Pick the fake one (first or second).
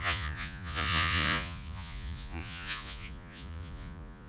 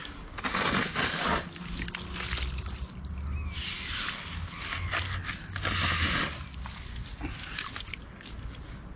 first